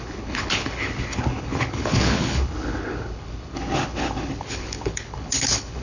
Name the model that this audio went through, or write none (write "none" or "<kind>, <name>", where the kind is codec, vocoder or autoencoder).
codec, HILCodec